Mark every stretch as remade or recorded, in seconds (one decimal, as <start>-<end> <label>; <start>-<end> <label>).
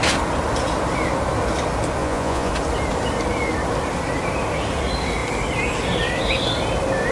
0.0-2.0 recorded; 2.0-2.5 remade; 2.5-7.1 recorded